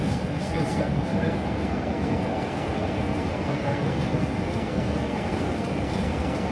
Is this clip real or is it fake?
fake